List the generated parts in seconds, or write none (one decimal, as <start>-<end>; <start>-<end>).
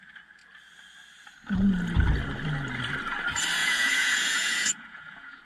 3.6-5.4